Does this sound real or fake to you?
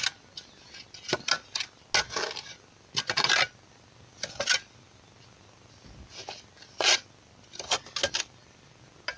real